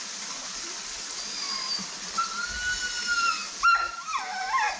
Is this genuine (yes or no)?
yes